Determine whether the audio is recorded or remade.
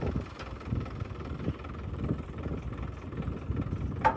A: recorded